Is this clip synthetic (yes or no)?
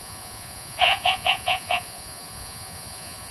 yes